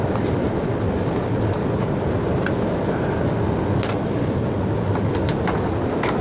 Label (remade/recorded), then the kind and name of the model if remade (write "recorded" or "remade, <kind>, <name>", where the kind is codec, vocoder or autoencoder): recorded